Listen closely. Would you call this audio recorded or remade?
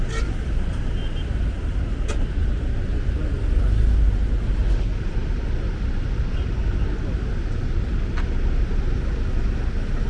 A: recorded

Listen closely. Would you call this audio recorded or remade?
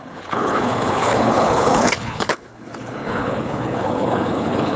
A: remade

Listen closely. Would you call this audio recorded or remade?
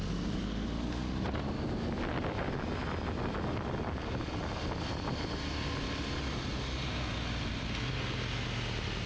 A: recorded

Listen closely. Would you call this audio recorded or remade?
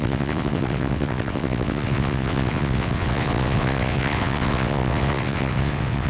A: remade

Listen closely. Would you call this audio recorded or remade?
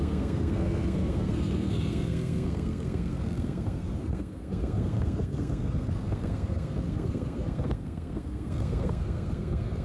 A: remade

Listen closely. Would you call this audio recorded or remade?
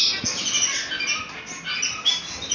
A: recorded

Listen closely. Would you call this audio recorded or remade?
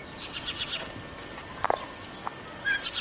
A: recorded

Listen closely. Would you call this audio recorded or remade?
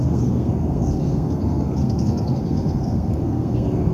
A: remade